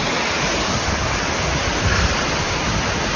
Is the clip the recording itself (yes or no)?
yes